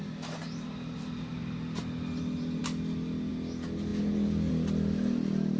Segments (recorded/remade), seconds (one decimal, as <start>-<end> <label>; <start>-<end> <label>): 0.0-5.6 recorded